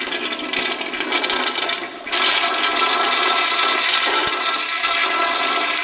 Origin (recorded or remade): recorded